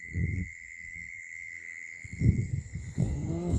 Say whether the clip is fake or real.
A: fake